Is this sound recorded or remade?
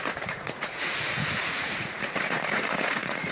remade